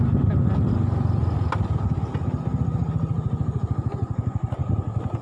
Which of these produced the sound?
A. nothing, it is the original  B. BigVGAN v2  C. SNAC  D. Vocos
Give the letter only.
A